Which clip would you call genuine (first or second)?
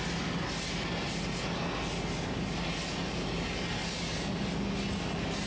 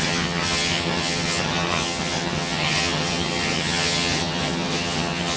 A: first